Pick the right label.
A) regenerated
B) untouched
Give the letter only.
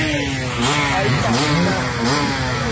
B